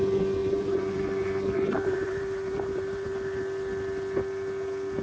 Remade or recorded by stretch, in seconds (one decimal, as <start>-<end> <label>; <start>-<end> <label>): 0.0-0.4 recorded; 0.4-3.4 remade; 3.4-5.0 recorded